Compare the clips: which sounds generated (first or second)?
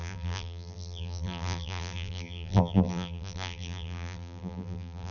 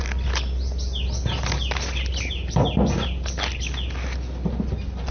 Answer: first